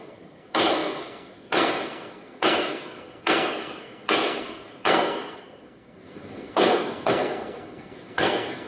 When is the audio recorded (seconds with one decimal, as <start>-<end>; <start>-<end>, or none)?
none